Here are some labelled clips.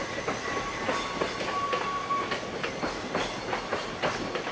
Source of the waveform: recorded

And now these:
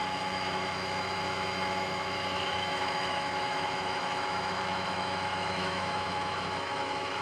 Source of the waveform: remade